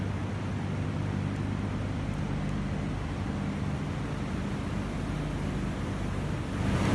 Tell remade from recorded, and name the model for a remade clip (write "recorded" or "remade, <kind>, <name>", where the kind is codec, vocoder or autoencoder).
recorded